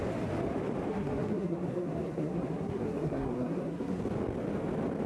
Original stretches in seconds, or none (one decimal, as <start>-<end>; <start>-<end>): 0.0-0.9; 4.0-5.1